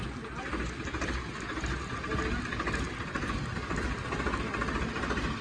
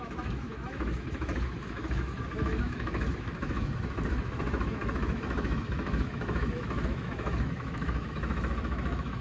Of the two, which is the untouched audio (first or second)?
first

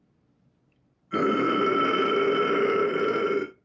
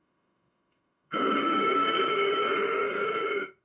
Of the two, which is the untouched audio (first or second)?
first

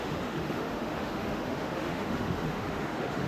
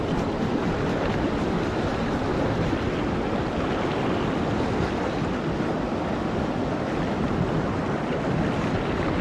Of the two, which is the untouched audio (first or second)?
second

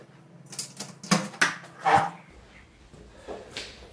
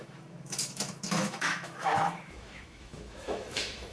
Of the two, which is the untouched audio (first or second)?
first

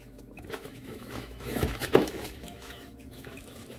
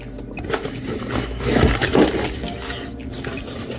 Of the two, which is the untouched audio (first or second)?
second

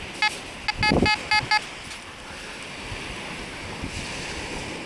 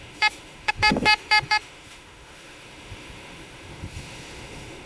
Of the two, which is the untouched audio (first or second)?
first